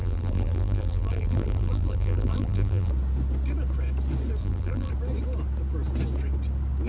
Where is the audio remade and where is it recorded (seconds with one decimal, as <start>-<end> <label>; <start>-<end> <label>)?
0.0-2.9 remade; 2.9-4.4 recorded; 4.4-4.9 remade; 4.9-6.9 recorded